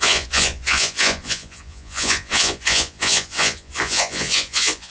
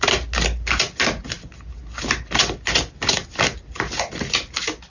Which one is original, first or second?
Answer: second